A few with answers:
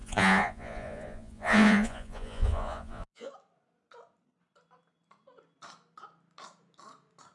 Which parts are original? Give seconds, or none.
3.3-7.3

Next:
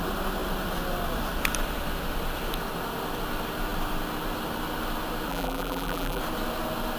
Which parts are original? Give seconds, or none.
0.0-5.3; 6.2-7.0